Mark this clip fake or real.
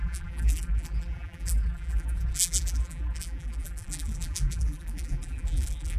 fake